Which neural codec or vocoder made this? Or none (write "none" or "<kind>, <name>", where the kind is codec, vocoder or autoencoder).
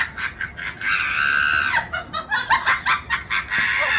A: none